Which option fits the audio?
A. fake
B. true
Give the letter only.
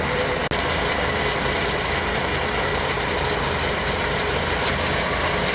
B